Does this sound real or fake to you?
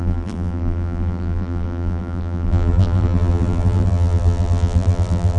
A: fake